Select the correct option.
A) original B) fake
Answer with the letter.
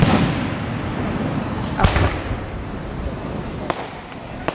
A